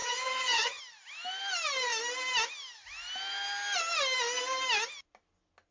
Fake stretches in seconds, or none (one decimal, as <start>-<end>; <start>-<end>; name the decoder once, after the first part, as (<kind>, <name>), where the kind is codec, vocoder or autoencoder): 0.0-0.8 (vocoder, HiFi-GAN)